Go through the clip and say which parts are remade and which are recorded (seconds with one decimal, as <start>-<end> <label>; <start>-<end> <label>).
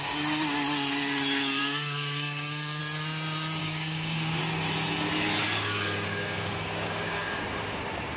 0.0-1.6 recorded; 1.6-2.8 remade; 2.8-3.6 recorded; 3.6-4.4 remade; 4.4-5.4 recorded; 5.4-7.4 remade; 7.4-8.2 recorded